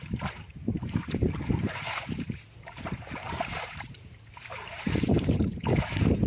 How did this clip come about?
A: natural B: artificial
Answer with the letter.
B